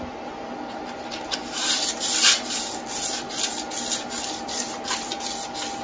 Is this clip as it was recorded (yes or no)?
yes